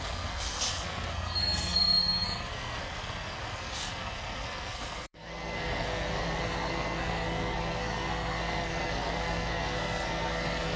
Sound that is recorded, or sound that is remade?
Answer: remade